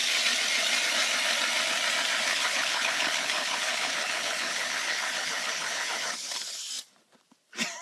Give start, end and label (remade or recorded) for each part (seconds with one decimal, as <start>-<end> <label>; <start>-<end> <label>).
0.0-2.3 recorded; 2.3-6.7 remade; 6.7-7.8 recorded